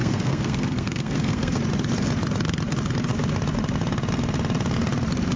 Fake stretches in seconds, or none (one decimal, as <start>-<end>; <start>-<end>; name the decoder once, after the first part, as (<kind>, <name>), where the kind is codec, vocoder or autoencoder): 0.0-1.6 (codec, SNAC)